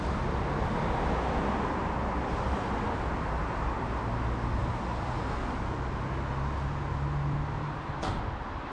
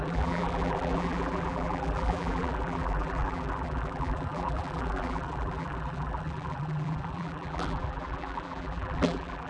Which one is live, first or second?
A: first